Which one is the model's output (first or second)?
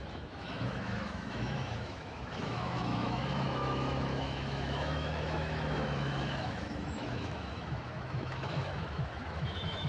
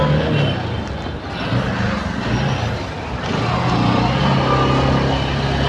first